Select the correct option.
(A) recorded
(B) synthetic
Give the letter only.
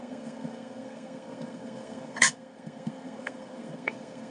B